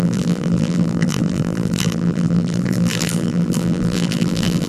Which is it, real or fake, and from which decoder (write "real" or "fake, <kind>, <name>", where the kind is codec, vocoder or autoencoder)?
fake, vocoder, BigVGAN v2